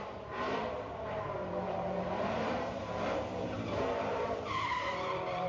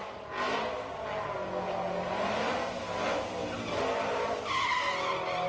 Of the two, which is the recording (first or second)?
second